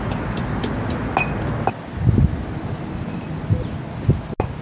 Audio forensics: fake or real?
real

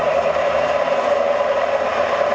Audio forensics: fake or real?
real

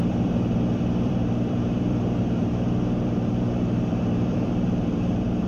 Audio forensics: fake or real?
fake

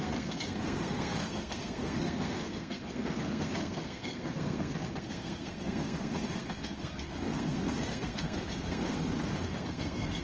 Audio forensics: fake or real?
fake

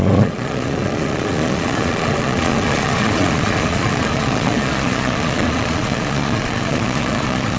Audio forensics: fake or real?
fake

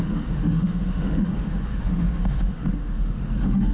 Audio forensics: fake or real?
fake